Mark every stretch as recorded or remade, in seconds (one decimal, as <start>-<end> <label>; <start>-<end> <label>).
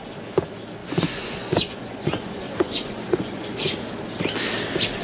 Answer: 0.0-0.8 recorded; 0.8-3.8 remade; 3.8-5.0 recorded